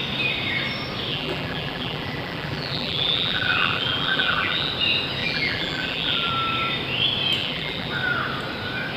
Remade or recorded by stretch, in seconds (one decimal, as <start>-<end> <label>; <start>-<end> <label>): 0.0-1.1 recorded; 1.1-4.7 remade; 4.7-5.2 recorded; 5.2-6.3 remade; 6.3-7.4 recorded; 7.4-7.9 remade; 7.9-9.0 recorded